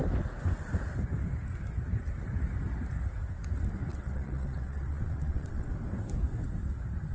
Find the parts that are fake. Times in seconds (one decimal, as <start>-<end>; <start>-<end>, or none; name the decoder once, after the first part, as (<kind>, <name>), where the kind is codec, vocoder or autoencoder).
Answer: 3.9-5.7 (vocoder, WaveNeXt)